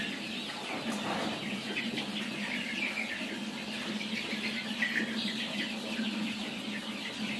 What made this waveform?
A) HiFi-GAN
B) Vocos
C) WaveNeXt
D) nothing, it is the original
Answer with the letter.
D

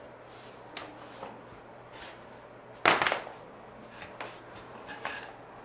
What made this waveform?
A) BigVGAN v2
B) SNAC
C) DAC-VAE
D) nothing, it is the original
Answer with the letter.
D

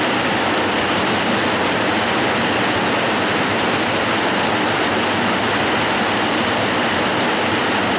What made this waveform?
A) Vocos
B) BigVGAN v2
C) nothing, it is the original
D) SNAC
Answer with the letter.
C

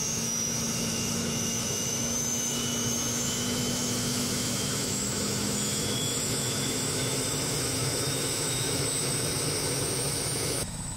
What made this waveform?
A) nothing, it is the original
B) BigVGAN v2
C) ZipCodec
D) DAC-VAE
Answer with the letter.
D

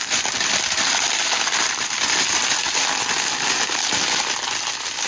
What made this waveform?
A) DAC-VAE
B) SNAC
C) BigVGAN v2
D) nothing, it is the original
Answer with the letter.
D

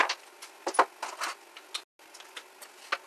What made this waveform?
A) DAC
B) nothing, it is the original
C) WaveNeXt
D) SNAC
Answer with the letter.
B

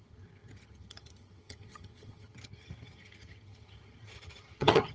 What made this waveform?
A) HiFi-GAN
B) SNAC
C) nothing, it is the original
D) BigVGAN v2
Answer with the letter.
A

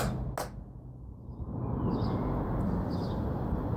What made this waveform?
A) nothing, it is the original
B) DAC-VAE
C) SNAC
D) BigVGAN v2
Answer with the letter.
A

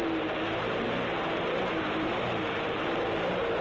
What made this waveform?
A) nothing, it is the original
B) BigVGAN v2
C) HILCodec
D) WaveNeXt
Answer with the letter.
B